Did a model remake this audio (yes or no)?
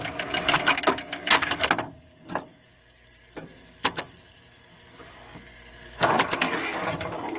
yes